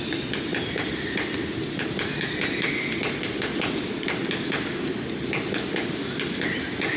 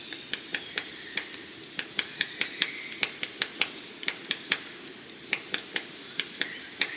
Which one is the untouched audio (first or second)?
first